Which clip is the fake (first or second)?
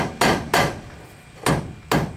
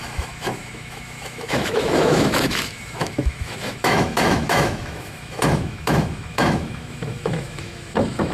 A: second